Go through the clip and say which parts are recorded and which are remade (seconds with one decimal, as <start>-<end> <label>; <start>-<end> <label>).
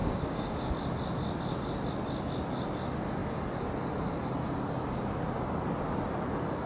0.0-0.7 remade; 0.7-6.7 recorded